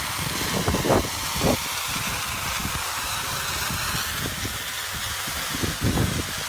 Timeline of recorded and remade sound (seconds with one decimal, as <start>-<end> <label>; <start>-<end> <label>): 0.0-2.6 recorded; 2.6-3.4 remade; 3.4-6.5 recorded